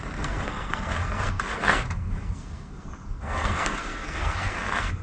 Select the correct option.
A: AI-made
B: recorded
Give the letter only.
A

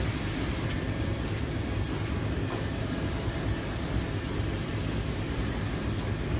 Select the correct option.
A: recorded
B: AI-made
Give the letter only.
A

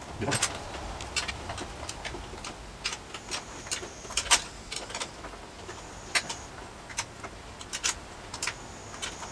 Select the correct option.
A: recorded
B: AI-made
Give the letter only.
A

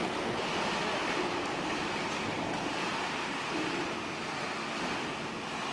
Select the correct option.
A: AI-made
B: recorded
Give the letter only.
B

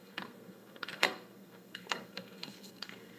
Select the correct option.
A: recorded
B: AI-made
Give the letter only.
B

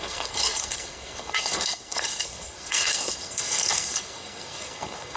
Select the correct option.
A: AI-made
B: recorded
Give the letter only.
A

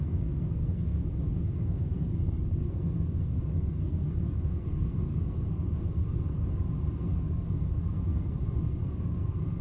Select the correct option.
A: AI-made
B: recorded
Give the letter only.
A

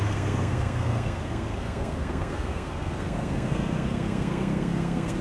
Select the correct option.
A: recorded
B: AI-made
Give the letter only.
B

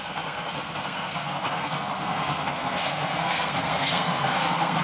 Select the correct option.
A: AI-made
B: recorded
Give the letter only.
A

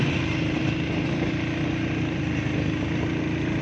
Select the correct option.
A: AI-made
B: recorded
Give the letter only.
B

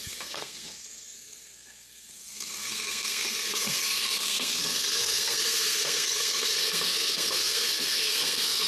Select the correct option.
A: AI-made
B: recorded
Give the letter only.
A